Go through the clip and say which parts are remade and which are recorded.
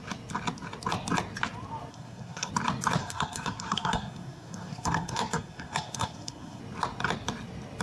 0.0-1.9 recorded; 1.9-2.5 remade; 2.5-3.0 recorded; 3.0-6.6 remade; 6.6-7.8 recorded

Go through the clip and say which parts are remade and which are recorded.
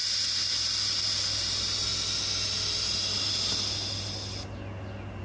0.0-5.2 recorded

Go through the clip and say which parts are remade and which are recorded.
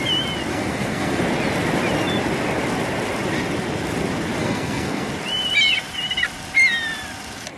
0.0-0.5 recorded; 0.5-1.2 remade; 1.2-4.4 recorded; 4.4-5.1 remade; 5.1-7.6 recorded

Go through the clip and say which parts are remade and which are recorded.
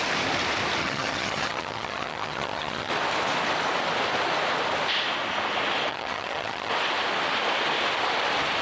0.0-0.8 recorded; 0.8-2.9 remade; 2.9-5.9 recorded; 5.9-6.7 remade; 6.7-8.6 recorded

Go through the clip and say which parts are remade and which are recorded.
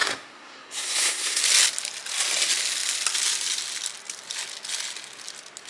0.0-1.4 remade; 1.4-5.7 recorded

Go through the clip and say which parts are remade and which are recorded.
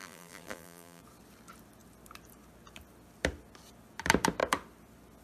0.0-1.0 remade; 1.0-5.2 recorded